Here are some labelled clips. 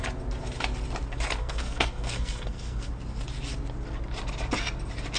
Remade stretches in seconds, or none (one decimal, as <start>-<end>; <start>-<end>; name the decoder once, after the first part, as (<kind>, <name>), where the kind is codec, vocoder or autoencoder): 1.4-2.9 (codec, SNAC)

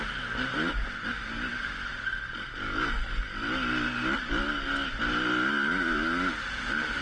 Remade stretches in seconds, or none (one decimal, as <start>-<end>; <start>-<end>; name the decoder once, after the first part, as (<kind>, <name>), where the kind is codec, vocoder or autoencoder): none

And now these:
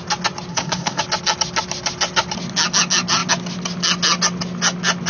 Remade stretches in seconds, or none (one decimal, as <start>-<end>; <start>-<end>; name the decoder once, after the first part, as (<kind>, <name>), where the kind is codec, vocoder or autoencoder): 0.5-1.0 (codec, ZipCodec)